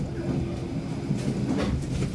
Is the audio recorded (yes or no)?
yes